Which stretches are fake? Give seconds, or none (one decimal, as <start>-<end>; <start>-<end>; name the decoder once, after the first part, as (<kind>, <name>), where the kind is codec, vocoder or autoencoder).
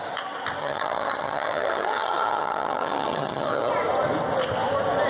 0.6-3.7 (vocoder, HiFi-GAN)